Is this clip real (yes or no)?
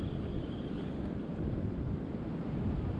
yes